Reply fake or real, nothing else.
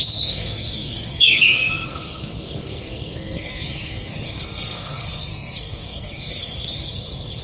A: fake